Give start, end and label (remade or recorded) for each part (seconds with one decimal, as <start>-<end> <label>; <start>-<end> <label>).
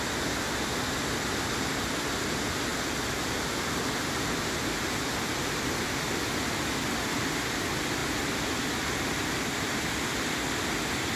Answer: 0.0-11.2 recorded